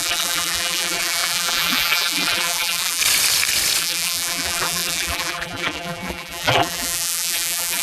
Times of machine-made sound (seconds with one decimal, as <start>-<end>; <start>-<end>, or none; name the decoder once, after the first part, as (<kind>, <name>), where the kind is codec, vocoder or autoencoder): 0.0-3.0 (vocoder, BigVGAN v2); 3.8-7.8